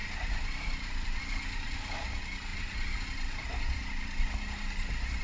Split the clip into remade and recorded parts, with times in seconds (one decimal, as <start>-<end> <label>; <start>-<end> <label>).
0.0-5.2 recorded